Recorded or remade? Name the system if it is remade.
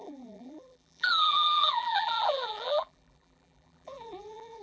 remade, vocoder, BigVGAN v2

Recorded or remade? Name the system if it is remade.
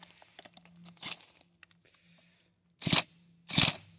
recorded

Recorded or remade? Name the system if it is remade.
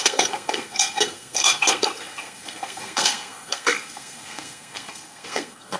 remade, codec, SNAC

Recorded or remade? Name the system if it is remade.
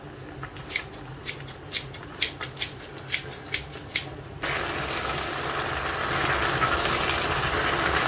recorded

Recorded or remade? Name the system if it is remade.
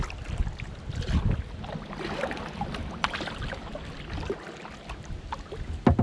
recorded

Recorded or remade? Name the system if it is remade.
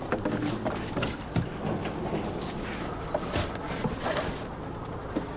recorded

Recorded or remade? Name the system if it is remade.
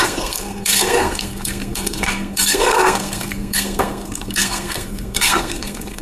remade, codec, SNAC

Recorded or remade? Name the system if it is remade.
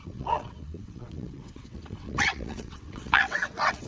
remade, vocoder, WaveNeXt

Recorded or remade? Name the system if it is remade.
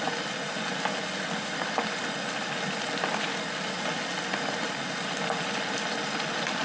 recorded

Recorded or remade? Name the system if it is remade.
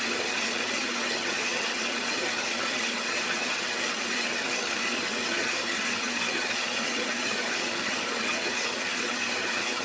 remade, vocoder, HiFi-GAN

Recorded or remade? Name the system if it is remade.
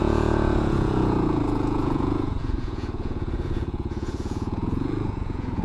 remade, vocoder, Vocos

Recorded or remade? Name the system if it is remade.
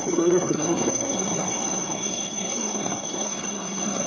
remade, codec, SNAC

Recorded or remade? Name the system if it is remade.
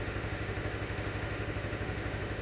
remade, autoencoder, DAC-VAE